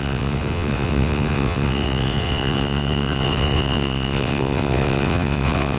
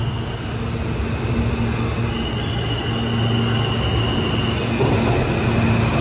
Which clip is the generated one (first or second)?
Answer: first